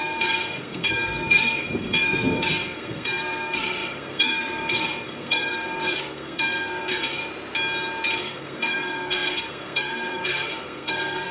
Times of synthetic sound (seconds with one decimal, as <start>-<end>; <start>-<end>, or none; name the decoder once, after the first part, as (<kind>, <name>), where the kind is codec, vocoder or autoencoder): 0.0-7.2 (codec, SNAC); 8.2-11.3